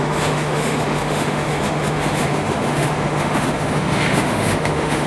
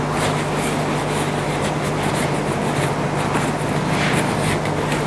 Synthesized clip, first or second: first